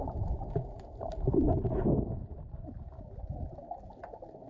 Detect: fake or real real